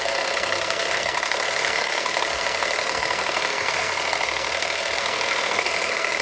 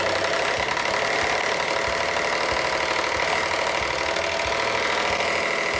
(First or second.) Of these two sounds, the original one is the second